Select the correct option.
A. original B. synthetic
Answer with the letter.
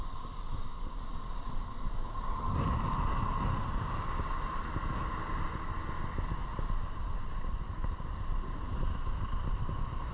A